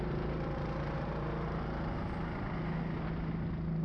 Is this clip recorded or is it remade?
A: recorded